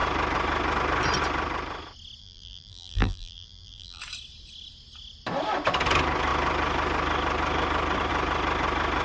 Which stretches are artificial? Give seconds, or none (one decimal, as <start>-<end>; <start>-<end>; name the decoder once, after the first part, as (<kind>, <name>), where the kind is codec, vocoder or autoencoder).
2.2-4.0 (vocoder, BigVGAN v2)